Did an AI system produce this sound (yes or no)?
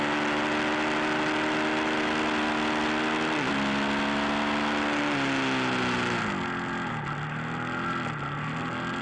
no